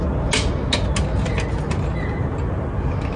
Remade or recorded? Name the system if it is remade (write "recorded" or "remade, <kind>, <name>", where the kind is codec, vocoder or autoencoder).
recorded